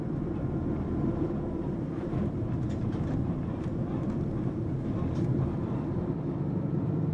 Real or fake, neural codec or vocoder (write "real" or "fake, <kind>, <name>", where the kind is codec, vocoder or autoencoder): fake, vocoder, BigVGAN v2